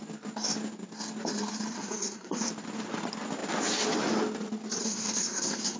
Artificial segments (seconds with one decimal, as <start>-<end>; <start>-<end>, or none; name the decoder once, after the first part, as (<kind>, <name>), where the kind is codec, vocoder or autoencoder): 1.7-2.5 (codec, SNAC); 4.8-5.8